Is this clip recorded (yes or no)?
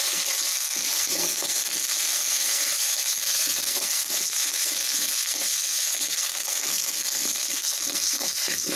no